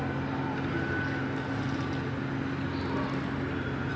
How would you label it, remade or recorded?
recorded